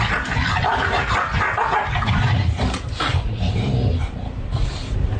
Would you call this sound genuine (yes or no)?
yes